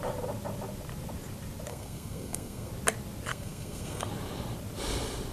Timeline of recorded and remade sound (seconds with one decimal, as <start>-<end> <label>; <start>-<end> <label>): 0.0-1.7 recorded; 1.7-2.7 remade; 2.7-3.3 recorded; 3.3-4.1 remade; 4.1-5.3 recorded